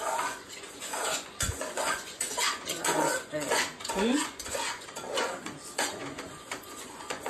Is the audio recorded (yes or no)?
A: no